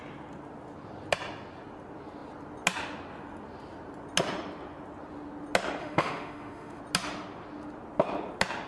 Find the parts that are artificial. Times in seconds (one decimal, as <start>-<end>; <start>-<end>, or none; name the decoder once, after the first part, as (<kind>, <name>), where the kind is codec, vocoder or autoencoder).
5.8-6.8 (autoencoder, DAC-VAE)